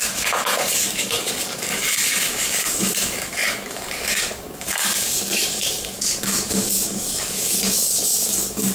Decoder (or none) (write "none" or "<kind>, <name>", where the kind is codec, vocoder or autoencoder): codec, DAC